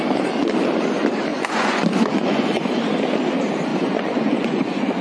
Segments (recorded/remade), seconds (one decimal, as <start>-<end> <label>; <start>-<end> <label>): 0.0-1.3 recorded; 1.3-2.6 remade; 2.6-3.7 recorded; 3.7-5.0 remade